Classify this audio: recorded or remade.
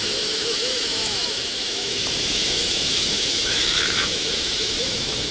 remade